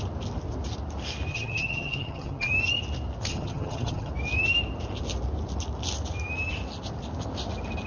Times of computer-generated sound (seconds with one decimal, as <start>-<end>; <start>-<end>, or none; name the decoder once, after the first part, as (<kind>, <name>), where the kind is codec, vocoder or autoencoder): 1.3-2.5 (vocoder, HiFi-GAN); 3.3-4.1